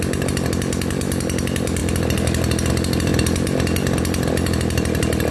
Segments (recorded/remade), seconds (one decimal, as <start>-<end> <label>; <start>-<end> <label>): 0.0-5.3 recorded